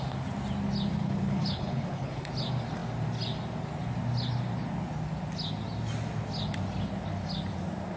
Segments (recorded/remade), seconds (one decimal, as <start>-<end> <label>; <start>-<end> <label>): 0.0-1.0 recorded; 1.0-2.3 remade; 2.3-8.0 recorded